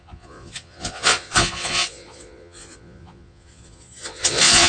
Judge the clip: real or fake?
fake